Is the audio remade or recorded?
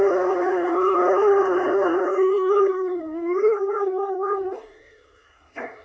remade